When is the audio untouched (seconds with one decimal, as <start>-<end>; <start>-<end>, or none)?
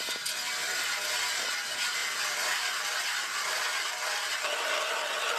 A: 0.0-2.0